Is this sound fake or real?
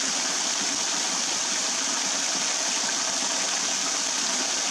real